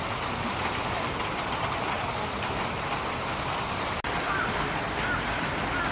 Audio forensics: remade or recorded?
recorded